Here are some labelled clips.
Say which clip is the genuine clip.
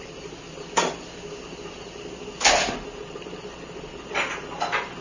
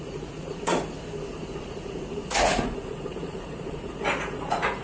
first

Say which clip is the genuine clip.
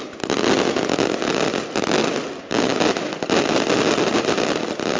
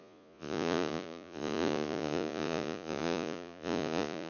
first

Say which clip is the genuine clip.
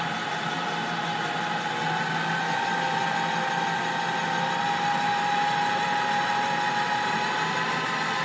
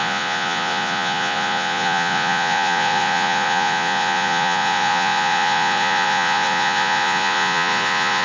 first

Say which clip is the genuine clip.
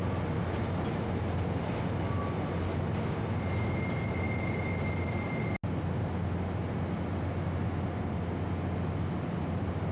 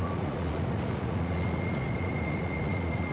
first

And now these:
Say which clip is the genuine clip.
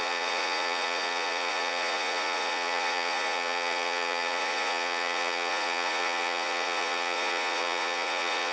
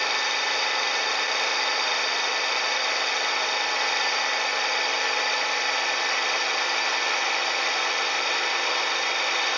second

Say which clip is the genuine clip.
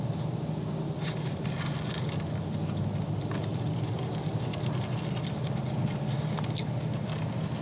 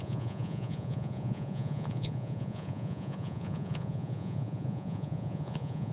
first